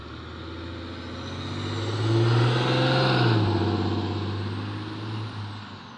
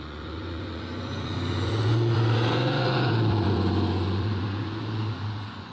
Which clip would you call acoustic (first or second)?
first